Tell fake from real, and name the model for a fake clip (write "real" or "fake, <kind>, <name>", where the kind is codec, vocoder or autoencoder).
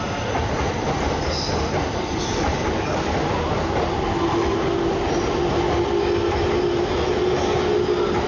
real